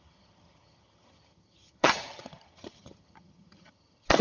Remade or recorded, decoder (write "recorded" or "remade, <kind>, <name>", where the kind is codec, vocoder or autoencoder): remade, vocoder, HiFi-GAN